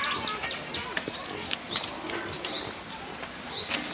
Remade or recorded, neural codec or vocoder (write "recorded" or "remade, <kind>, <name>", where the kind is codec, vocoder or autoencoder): recorded